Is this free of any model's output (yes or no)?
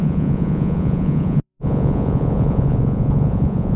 no